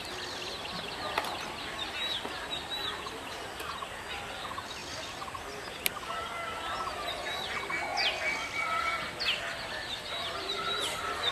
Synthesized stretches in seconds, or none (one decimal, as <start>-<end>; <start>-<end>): none

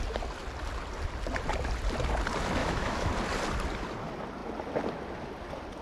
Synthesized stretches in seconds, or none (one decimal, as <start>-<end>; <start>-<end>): 2.6-3.1

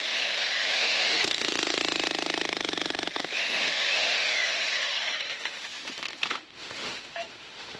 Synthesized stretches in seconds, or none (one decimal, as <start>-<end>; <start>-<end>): 0.0-1.8; 3.2-7.8

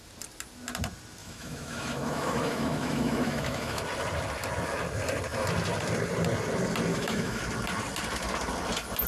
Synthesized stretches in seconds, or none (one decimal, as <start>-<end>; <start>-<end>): 1.2-3.8; 6.9-7.4

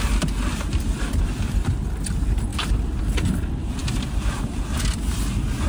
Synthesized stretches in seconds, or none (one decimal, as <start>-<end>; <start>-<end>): none

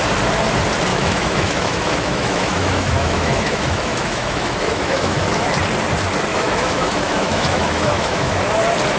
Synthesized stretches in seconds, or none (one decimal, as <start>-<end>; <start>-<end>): 0.9-5.5; 6.3-8.4